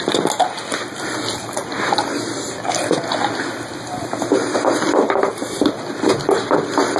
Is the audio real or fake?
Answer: real